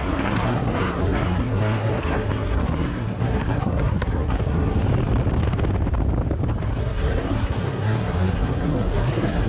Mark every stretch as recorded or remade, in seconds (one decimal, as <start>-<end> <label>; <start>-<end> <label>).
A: 0.0-4.8 remade; 4.8-6.8 recorded; 6.8-9.5 remade